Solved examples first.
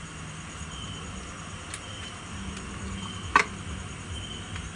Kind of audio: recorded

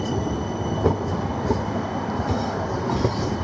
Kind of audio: recorded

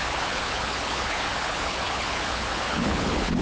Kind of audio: remade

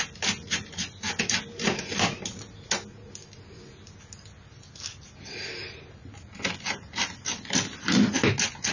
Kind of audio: recorded